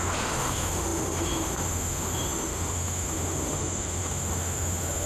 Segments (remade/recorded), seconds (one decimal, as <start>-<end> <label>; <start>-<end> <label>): 0.0-5.1 remade